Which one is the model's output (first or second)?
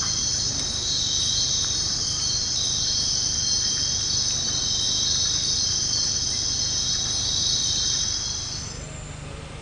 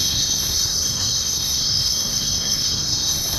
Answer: second